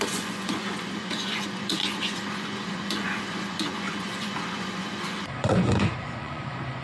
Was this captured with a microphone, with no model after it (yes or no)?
no